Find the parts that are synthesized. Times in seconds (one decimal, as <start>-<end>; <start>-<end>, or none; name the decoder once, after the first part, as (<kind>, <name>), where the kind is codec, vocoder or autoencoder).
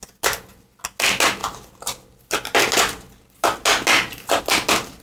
none